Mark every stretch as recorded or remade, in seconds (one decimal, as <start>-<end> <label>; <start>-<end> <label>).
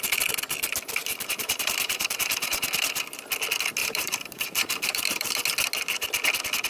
0.0-1.0 recorded; 1.0-2.6 remade; 2.6-3.8 recorded; 3.8-5.4 remade; 5.4-6.7 recorded